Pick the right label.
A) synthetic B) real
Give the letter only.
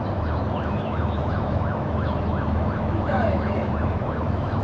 A